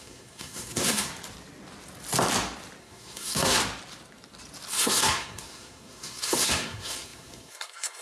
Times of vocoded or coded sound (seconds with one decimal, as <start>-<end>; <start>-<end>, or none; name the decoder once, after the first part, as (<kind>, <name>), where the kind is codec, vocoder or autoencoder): 0.0-1.1 (codec, SNAC); 2.8-3.6; 4.7-8.0